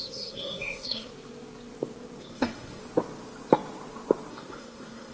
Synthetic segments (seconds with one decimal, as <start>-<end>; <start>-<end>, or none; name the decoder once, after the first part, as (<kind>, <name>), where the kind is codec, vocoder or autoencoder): 0.0-1.1 (codec, SNAC); 2.2-2.8; 4.3-5.1